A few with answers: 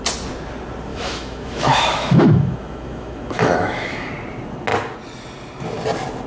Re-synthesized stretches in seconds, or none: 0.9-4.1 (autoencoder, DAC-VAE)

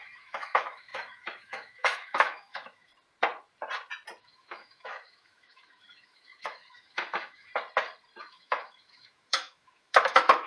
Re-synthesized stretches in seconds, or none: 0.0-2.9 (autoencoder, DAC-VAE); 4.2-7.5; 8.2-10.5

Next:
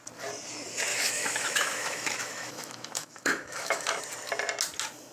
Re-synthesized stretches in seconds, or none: 0.9-4.0 (autoencoder, DAC-VAE)